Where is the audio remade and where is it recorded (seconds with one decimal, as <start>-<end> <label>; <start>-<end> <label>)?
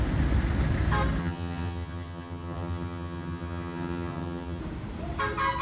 0.0-1.2 recorded; 1.2-4.6 remade; 4.6-5.6 recorded